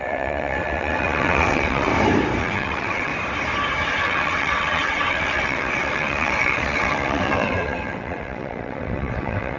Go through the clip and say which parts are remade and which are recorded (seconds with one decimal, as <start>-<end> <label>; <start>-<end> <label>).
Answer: 0.0-1.9 remade; 1.9-2.4 recorded; 2.4-3.1 remade; 3.1-4.0 recorded; 4.0-9.6 remade